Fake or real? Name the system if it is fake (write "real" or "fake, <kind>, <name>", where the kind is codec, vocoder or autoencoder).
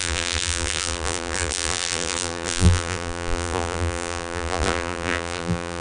fake, vocoder, BigVGAN v2